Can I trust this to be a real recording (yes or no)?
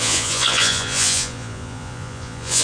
no